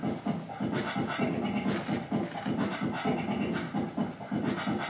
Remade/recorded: recorded